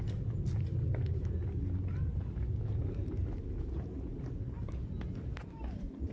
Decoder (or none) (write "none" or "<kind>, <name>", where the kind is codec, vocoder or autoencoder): none